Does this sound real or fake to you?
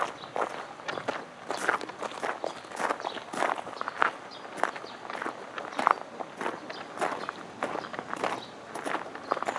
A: real